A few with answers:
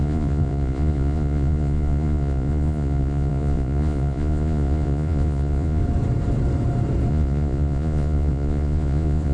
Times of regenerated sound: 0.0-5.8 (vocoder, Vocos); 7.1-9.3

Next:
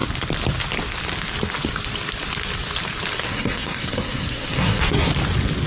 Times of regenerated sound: 3.2-5.1 (codec, SNAC)

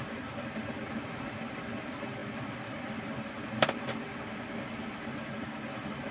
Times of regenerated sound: none

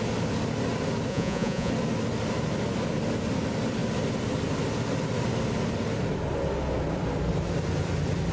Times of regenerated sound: 1.1-1.7 (vocoder, Vocos)

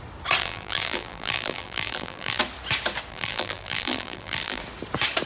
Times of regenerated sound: 0.4-2.4 (vocoder, BigVGAN v2); 3.1-4.6